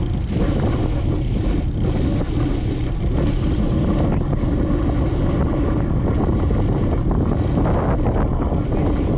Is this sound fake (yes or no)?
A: no